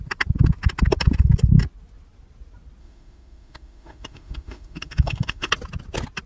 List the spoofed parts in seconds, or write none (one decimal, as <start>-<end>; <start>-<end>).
2.8-5.5